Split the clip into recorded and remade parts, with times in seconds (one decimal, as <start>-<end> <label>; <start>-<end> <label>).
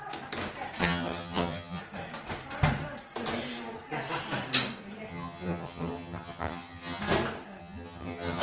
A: 0.0-0.8 recorded; 0.8-1.8 remade; 1.8-5.1 recorded; 5.1-7.0 remade; 7.0-7.6 recorded; 7.6-8.4 remade